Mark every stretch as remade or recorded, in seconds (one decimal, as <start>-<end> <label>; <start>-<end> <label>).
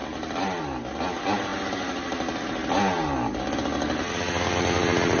0.0-5.2 recorded